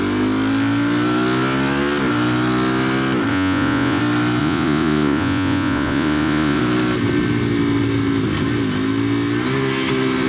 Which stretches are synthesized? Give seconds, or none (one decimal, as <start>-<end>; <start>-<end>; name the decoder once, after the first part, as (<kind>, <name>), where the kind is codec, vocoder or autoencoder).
3.3-4.0 (vocoder, Vocos); 4.4-6.6